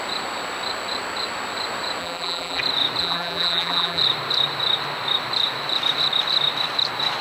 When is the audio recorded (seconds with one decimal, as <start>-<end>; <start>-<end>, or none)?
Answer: 0.0-2.0; 2.6-3.0; 4.0-7.2